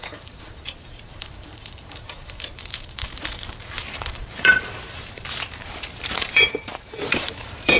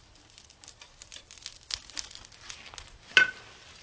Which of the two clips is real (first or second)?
second